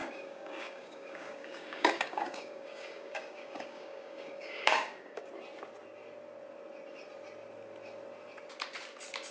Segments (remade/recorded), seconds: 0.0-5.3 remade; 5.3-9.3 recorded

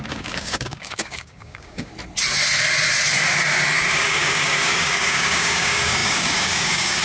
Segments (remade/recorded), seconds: 0.0-1.9 remade; 1.9-3.9 recorded; 3.9-7.0 remade